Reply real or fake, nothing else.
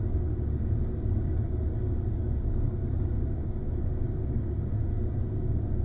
fake